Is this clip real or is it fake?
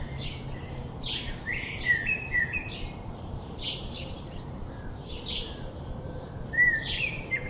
fake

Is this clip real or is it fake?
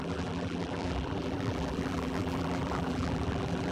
fake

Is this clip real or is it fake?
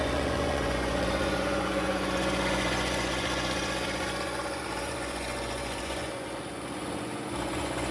fake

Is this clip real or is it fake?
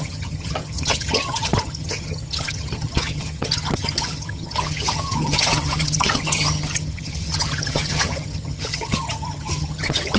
fake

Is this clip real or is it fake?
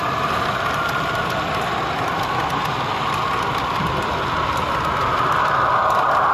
real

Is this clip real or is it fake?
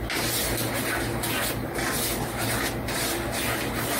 real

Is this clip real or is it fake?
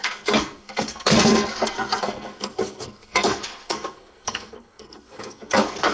fake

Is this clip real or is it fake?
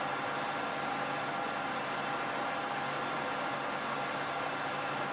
real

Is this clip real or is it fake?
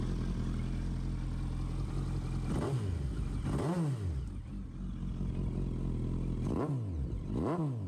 real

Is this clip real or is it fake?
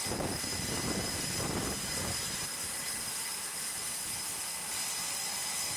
real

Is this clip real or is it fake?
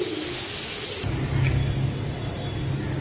real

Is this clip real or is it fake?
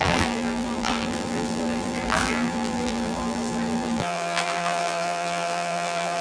fake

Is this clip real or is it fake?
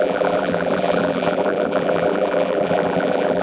fake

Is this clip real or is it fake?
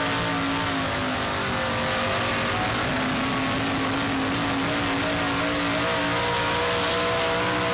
real